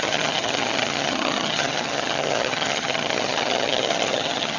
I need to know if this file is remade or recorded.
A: remade